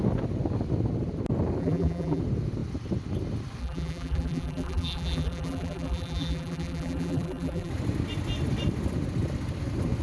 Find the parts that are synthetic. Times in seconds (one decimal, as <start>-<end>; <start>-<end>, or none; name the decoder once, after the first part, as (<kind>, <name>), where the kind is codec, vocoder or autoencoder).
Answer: 1.6-2.2 (vocoder, BigVGAN v2); 3.6-7.7